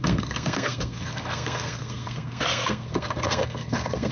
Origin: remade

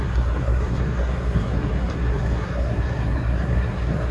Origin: remade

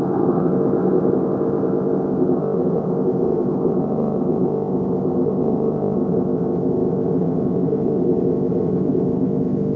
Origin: remade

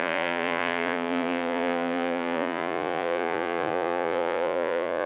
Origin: remade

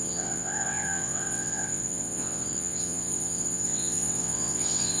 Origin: remade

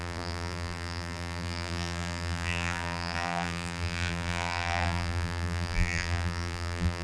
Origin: remade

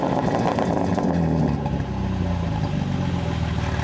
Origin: recorded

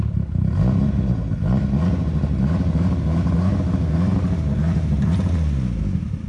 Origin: recorded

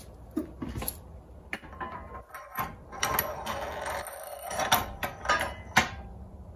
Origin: recorded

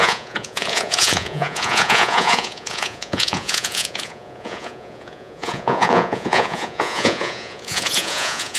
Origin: remade